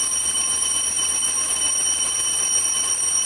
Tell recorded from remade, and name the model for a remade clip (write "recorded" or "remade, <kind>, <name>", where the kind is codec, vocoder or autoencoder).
remade, vocoder, BigVGAN v2